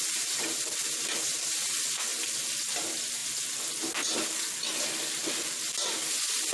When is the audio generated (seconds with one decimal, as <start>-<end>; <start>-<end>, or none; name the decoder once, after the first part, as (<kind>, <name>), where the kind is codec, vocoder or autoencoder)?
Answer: none